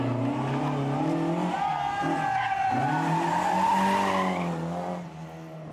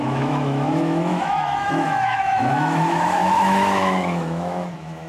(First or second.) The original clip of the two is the first